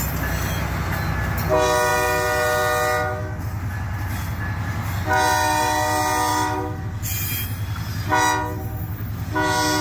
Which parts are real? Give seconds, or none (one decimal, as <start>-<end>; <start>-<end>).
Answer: 0.0-6.3; 6.8-9.8